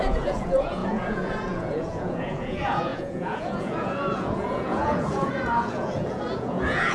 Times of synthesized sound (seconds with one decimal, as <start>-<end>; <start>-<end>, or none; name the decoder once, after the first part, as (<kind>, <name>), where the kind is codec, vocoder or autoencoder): 0.0-6.9 (vocoder, Vocos)